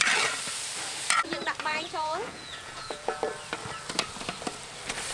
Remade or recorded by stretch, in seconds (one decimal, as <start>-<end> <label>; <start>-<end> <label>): 0.0-1.7 recorded; 1.7-3.2 remade; 3.2-5.1 recorded